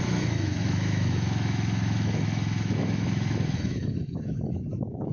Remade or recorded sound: remade